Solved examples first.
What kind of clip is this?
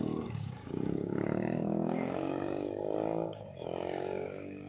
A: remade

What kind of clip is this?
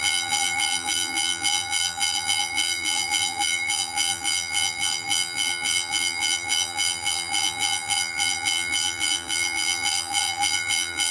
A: remade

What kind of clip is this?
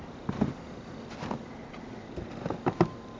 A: recorded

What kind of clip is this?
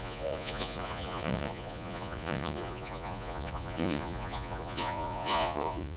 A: remade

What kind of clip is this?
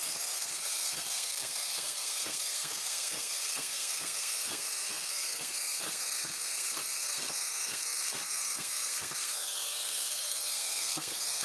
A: remade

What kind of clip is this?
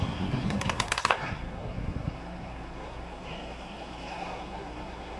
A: remade